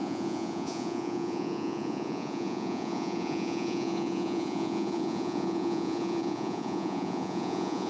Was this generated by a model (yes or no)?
yes